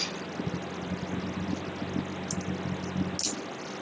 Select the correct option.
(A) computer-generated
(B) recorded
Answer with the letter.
B